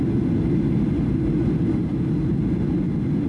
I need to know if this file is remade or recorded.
recorded